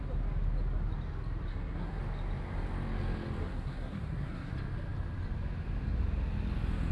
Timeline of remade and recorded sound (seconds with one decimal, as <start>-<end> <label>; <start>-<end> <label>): 0.0-1.5 recorded; 1.5-2.0 remade; 2.0-3.4 recorded; 3.4-4.5 remade; 4.5-6.9 recorded